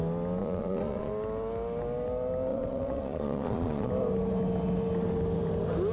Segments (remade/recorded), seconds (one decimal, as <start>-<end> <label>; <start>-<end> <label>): 0.0-0.4 recorded; 0.4-1.1 remade; 1.1-2.5 recorded; 2.5-3.9 remade; 3.9-5.9 recorded